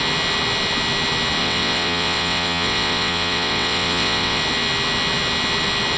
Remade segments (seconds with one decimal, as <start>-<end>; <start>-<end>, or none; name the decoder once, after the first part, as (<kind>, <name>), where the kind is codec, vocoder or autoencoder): 1.4-4.4 (vocoder, WaveNeXt)